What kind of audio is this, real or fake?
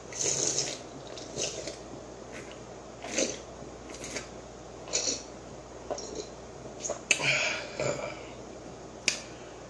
real